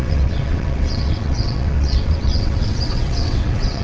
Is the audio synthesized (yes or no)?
yes